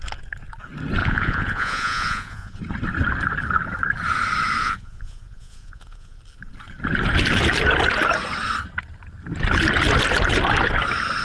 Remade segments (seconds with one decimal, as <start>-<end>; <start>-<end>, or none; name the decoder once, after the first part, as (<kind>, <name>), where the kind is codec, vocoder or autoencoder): 1.0-2.6 (vocoder, Vocos); 4.6-6.2